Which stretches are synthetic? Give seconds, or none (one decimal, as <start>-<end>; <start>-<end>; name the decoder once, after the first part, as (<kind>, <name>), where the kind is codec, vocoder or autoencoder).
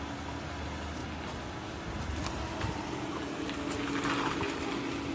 none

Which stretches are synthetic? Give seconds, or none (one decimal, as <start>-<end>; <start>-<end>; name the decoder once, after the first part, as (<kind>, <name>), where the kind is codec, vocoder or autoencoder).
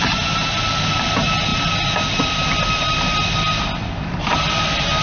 none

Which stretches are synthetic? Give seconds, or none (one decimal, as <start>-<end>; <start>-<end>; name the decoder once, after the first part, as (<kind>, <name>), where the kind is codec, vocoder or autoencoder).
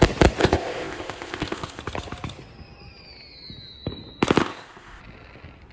0.4-1.8 (codec, ZipCodec); 4.4-5.0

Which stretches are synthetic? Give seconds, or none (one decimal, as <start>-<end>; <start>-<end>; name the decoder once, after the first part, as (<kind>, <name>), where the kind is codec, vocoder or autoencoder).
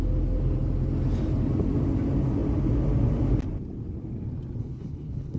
4.6-5.4 (codec, HILCodec)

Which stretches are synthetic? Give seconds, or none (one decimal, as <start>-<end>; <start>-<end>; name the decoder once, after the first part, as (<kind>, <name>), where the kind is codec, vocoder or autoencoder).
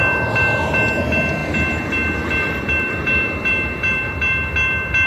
1.4-4.5 (vocoder, BigVGAN v2)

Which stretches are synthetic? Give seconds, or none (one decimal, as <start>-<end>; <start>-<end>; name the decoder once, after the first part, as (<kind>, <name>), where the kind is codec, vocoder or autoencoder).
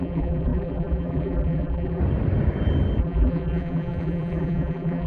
0.0-2.0 (vocoder, BigVGAN v2); 3.0-5.1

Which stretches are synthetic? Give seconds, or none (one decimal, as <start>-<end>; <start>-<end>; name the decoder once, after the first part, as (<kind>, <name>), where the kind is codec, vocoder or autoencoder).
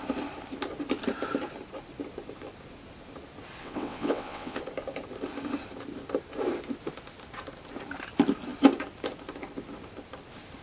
3.6-4.6 (vocoder, WaveNeXt)